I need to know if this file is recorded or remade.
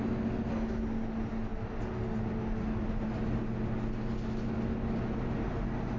recorded